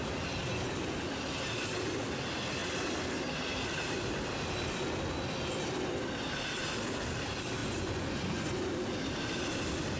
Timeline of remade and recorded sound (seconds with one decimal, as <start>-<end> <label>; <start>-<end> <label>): 0.0-7.6 recorded; 7.6-8.5 remade; 8.5-10.0 recorded